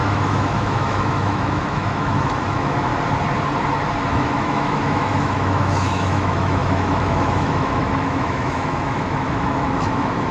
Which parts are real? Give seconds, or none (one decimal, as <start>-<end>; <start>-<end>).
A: 2.9-4.1